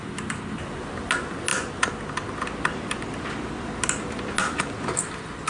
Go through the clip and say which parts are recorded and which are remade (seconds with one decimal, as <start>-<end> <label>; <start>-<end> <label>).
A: 0.0-5.5 recorded

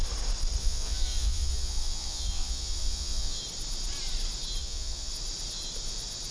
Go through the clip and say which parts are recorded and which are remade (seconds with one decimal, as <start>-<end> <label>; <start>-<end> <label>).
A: 0.0-0.6 recorded; 0.6-3.4 remade; 3.4-4.6 recorded; 4.6-5.1 remade; 5.1-6.3 recorded

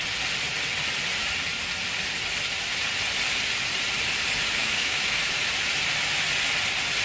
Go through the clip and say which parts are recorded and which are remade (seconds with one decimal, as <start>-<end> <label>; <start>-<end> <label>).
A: 0.0-4.6 recorded; 4.6-5.3 remade; 5.3-7.0 recorded

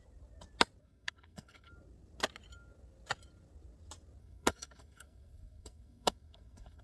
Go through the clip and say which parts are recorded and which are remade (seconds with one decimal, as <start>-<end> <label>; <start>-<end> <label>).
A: 0.0-0.8 recorded; 0.8-1.7 remade; 1.7-4.2 recorded; 4.2-6.8 remade

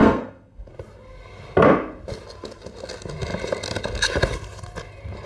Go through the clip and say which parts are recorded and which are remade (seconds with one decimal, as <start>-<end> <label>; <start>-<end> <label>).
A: 0.0-0.7 remade; 0.7-5.3 recorded

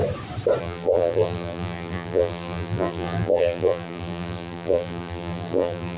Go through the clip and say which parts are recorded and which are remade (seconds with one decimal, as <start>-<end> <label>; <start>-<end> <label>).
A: 0.0-0.6 recorded; 0.6-6.0 remade

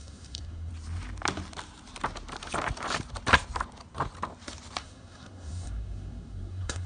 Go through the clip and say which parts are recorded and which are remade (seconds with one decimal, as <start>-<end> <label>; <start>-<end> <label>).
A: 0.0-0.7 remade; 0.7-4.8 recorded; 4.8-6.9 remade